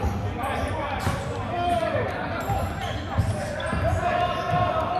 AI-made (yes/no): no